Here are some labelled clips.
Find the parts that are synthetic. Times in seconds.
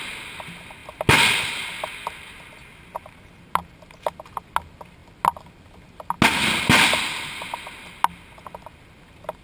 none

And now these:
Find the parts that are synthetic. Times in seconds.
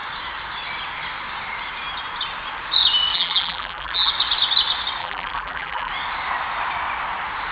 3.1-4.1 (vocoder, BigVGAN v2); 5.0-5.9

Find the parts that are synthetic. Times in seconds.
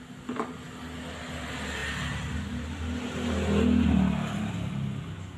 none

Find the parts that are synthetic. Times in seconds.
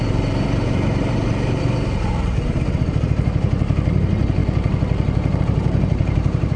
0.0-4.4 (vocoder, BigVGAN v2); 5.4-6.6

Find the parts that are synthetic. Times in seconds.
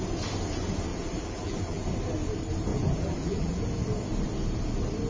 0.9-1.8 (vocoder, BigVGAN v2); 2.7-3.6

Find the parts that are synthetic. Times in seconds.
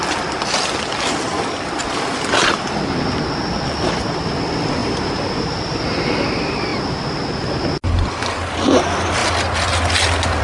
4.8-5.8 (vocoder, BigVGAN v2)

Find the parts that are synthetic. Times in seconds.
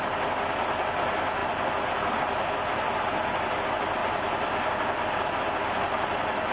1.4-2.2 (vocoder, BigVGAN v2)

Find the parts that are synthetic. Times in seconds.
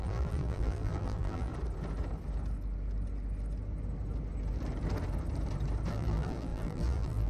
0.0-1.5 (vocoder, BigVGAN v2); 5.9-7.3